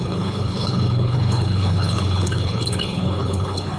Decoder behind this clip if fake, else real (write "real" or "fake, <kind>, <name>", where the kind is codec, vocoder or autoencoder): fake, codec, HILCodec